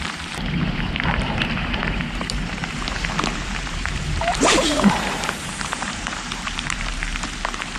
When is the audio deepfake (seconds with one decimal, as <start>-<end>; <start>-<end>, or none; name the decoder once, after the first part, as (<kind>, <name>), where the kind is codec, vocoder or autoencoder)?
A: 0.0-7.1 (vocoder, BigVGAN v2)